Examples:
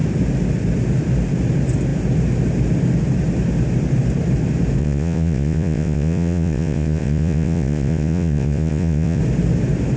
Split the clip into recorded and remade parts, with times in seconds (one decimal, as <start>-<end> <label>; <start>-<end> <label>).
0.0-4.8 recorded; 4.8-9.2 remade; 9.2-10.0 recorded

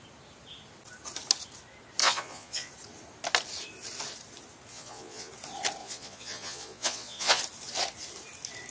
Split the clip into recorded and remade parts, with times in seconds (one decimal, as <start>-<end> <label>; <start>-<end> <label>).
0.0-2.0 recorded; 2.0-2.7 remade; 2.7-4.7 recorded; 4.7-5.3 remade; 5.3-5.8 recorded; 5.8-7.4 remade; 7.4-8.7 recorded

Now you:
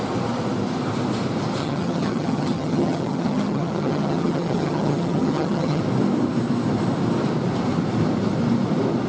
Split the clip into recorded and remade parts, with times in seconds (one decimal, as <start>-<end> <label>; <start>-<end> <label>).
0.0-1.6 recorded; 1.6-5.8 remade; 5.8-9.1 recorded

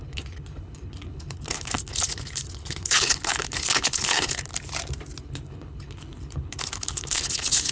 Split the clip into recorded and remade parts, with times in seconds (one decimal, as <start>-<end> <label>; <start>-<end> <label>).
0.0-4.5 remade; 4.5-5.2 recorded; 5.2-7.7 remade

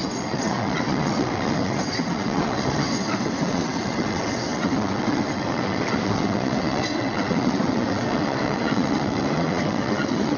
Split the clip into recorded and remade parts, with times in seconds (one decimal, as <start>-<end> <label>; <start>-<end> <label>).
0.0-10.4 remade